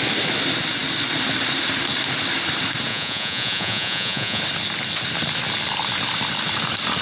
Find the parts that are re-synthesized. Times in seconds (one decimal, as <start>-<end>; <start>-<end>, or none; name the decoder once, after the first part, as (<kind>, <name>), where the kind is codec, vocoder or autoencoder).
2.9-4.4 (vocoder, Vocos)